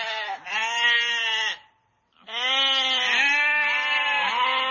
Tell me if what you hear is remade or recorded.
recorded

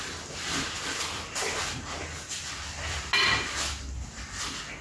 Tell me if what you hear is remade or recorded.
recorded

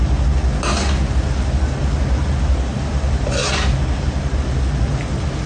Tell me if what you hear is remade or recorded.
recorded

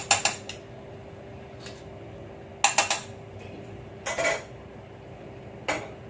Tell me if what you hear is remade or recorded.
recorded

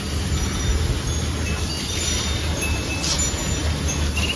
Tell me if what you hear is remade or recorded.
recorded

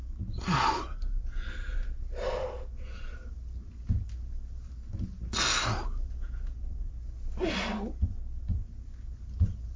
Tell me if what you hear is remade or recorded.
recorded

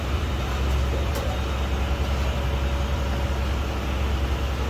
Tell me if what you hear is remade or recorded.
recorded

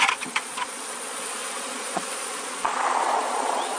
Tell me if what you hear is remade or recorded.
remade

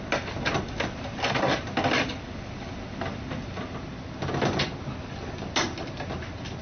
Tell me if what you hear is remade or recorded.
recorded